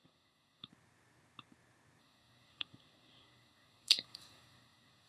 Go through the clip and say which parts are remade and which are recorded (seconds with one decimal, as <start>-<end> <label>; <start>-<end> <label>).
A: 0.0-0.7 remade; 0.7-2.0 recorded; 2.0-5.1 remade